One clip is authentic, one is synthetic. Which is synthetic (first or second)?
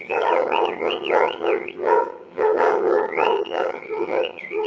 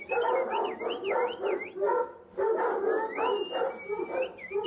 first